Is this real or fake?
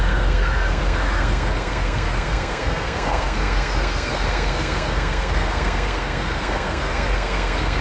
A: fake